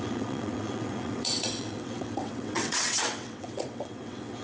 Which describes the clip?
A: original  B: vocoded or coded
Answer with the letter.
B